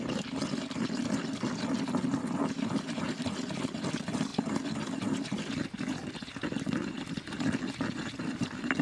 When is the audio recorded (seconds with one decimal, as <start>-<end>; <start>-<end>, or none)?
0.0-8.8